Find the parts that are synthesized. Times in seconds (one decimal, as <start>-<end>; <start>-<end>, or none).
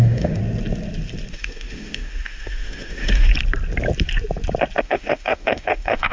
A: 0.0-0.4; 1.3-3.3; 4.8-6.1